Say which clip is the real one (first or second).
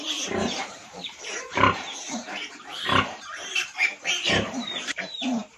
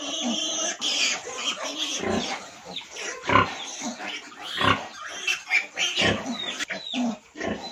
second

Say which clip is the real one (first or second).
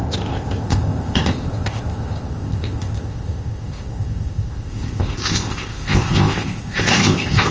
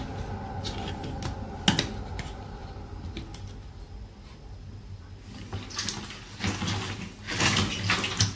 second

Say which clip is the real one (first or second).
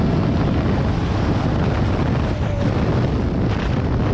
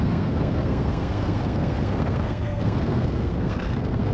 first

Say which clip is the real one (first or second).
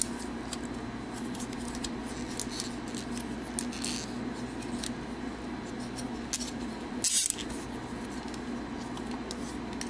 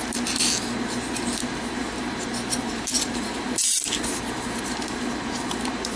first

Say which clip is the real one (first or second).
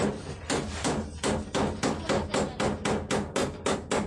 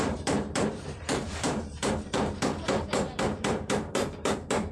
first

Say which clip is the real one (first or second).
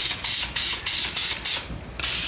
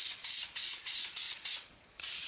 first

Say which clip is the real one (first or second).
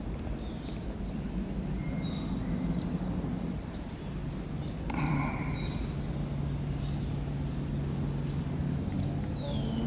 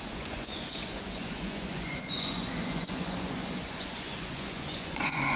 first